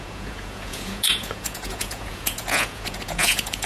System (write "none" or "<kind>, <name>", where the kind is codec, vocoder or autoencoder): vocoder, Vocos